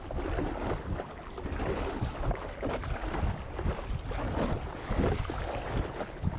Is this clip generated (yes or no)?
no